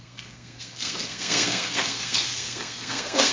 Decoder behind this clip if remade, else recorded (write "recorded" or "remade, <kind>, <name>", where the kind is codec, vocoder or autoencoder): remade, codec, SNAC